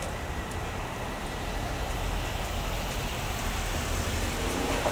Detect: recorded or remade recorded